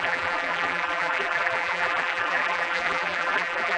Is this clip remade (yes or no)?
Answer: yes